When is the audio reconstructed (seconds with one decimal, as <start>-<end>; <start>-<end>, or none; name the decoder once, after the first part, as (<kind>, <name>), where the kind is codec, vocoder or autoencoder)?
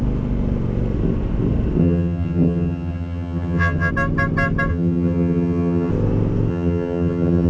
1.8-3.9 (vocoder, HiFi-GAN); 4.7-5.9; 6.5-7.5